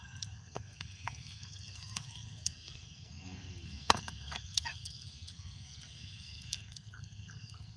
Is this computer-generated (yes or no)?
yes